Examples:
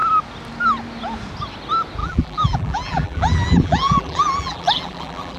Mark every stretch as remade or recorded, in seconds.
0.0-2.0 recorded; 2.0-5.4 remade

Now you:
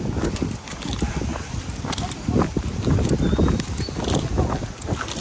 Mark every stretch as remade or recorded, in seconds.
0.0-5.2 recorded

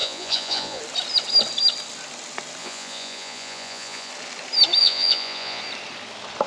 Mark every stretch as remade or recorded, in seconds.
0.0-0.8 remade; 0.8-2.6 recorded; 2.6-4.1 remade; 4.1-4.8 recorded; 4.8-5.6 remade; 5.6-6.5 recorded

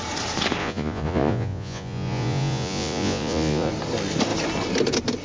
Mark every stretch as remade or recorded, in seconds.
0.0-0.6 recorded; 0.6-3.7 remade; 3.7-5.2 recorded

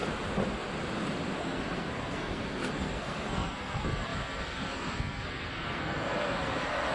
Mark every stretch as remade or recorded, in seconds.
0.0-1.4 recorded; 1.4-6.9 remade